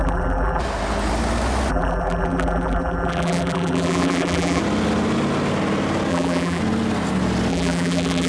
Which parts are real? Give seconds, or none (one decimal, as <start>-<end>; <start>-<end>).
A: 0.6-1.7; 4.6-6.1; 6.6-7.5